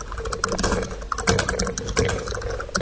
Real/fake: real